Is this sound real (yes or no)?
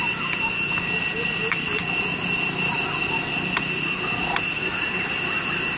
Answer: yes